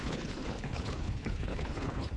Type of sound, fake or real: fake